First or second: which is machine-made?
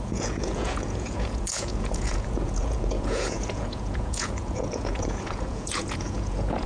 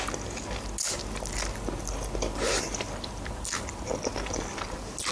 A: first